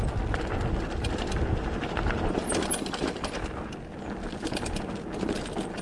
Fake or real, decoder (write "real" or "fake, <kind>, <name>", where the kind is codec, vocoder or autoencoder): real